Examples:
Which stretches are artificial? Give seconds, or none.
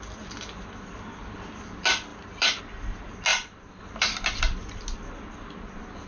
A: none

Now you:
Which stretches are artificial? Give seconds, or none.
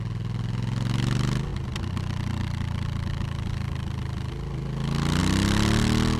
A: none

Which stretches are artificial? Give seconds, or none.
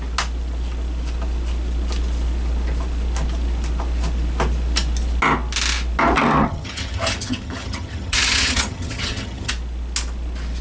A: 6.4-9.5 (vocoder, HiFi-GAN)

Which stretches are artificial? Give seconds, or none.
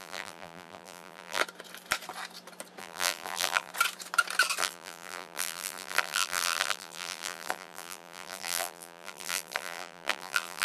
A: 0.0-1.4 (vocoder, BigVGAN v2); 2.8-3.7; 4.6-10.6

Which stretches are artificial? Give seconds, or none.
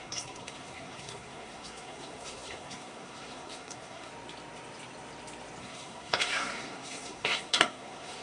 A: 0.0-4.1 (codec, SNAC); 5.6-8.2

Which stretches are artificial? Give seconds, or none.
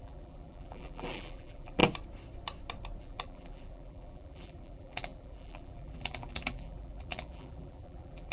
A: 0.0-1.8 (vocoder, BigVGAN v2); 3.0-8.3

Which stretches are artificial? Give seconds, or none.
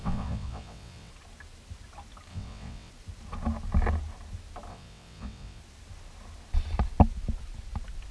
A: 0.0-1.1 (vocoder, WaveNeXt); 2.3-2.9; 4.7-5.6